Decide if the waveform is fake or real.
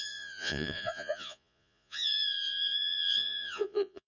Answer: fake